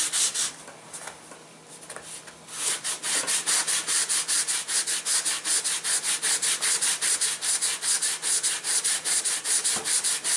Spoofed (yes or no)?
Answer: no